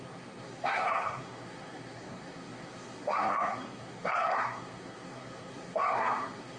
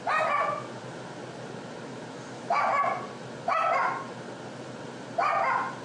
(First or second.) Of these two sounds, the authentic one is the second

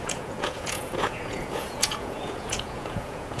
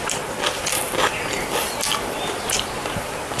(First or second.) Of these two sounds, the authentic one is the second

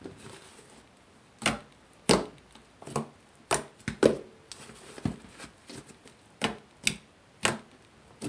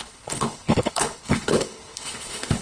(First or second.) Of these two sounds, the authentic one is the first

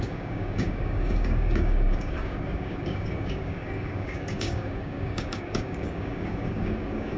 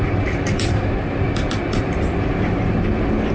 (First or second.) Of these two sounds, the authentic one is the second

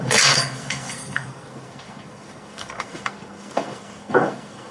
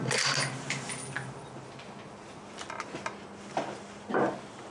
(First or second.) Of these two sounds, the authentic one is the second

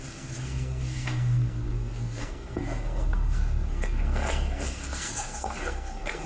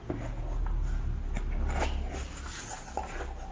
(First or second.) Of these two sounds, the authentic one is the second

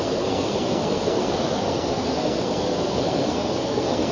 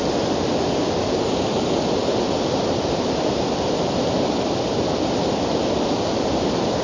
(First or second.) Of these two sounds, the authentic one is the second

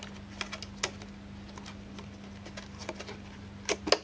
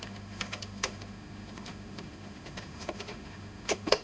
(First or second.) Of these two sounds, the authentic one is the first